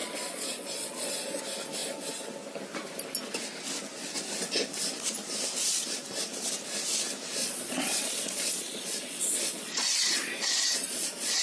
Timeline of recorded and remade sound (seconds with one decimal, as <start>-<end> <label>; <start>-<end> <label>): 0.0-1.4 remade; 1.4-7.4 recorded; 7.4-11.4 remade